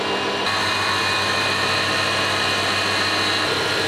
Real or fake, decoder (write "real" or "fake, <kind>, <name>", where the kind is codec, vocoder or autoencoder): real